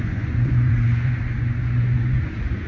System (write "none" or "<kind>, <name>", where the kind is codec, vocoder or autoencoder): vocoder, Vocos